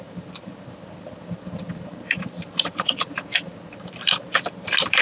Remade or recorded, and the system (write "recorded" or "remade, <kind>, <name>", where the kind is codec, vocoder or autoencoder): remade, vocoder, BigVGAN v2